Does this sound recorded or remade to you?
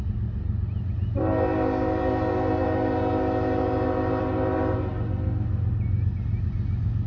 recorded